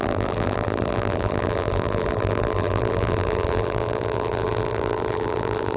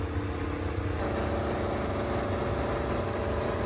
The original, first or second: second